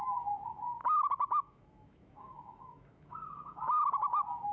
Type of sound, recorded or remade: remade